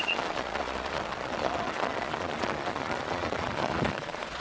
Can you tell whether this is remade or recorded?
remade